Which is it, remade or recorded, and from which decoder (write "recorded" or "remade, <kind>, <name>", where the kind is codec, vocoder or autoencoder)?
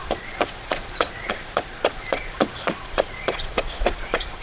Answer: remade, vocoder, Vocos